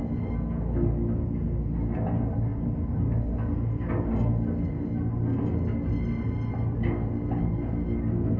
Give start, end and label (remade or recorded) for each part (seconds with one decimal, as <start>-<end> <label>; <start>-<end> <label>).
0.0-8.4 recorded